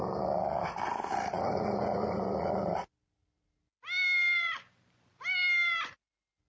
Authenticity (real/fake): real